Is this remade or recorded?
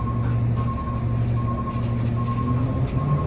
recorded